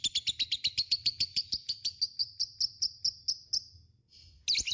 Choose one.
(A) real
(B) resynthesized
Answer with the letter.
A